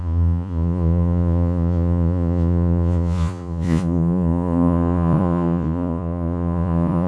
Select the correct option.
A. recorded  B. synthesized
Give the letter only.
B